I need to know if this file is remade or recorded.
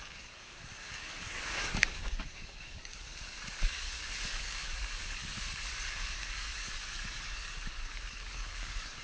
remade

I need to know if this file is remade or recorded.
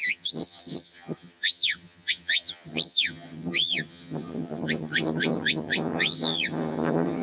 remade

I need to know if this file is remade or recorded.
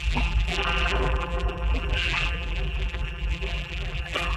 remade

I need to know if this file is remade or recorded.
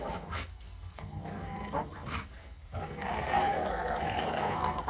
remade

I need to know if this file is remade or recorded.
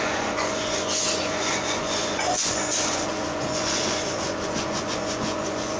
remade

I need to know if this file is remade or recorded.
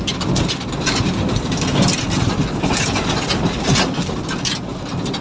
recorded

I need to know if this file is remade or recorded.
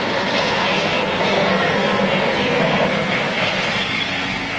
remade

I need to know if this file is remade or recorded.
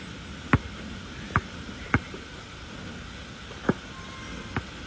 recorded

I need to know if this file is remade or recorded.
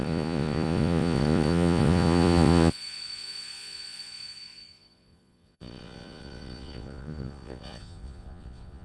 remade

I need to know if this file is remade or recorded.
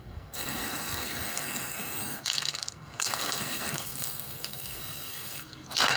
remade